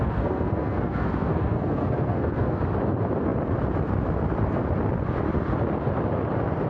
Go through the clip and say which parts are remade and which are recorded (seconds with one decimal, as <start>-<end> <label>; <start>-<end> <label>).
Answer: 0.0-2.6 remade; 2.6-6.7 recorded